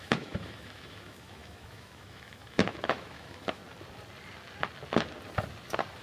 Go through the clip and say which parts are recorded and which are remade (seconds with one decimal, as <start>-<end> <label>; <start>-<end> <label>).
0.0-3.6 remade; 3.6-6.0 recorded